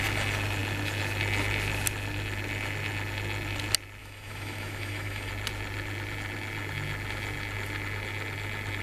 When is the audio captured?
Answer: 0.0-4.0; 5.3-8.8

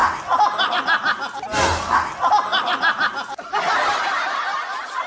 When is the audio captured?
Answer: 0.0-5.1